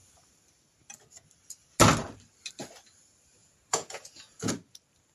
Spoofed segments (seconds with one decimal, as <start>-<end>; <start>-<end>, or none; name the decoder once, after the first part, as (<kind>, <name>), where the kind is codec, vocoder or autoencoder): 3.4-4.5 (vocoder, Vocos)

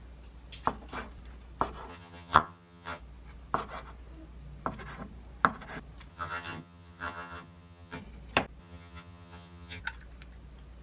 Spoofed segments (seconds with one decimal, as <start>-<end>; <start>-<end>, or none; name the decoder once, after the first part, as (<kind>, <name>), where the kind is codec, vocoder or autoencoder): 1.9-3.0 (vocoder, HiFi-GAN); 6.1-8.0; 8.6-9.8

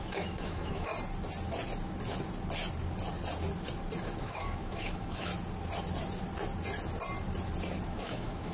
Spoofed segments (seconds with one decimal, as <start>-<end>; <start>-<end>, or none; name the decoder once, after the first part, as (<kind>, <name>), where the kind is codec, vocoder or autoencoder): 0.0-0.9 (autoencoder, DAC-VAE); 4.2-5.3; 7.9-8.5

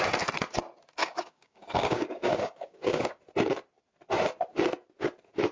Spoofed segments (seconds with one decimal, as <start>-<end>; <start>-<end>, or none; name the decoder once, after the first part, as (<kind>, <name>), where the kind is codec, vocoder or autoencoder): 1.0-3.2 (codec, DAC)